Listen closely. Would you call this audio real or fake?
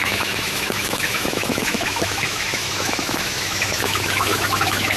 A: fake